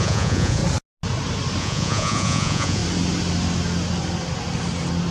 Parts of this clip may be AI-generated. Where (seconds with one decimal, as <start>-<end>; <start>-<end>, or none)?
0.0-0.6; 1.6-2.8